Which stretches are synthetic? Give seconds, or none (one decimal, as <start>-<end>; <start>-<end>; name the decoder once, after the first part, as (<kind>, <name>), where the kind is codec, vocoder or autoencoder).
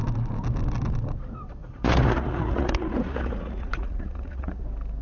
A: 1.6-4.6 (vocoder, Vocos)